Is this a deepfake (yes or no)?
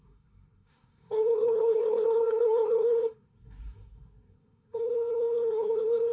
yes